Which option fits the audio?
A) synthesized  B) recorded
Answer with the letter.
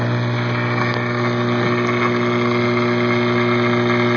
B